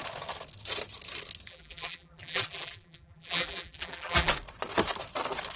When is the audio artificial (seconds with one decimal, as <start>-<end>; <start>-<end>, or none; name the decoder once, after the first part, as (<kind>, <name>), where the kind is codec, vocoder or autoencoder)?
1.5-4.3 (vocoder, BigVGAN v2)